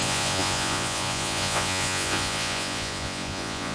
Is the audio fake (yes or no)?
yes